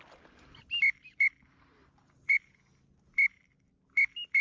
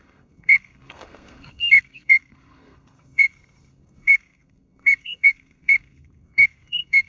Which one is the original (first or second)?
first